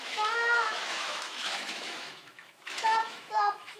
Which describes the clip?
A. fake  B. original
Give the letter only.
A